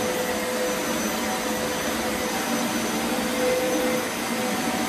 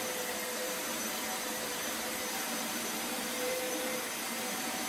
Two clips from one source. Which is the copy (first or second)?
second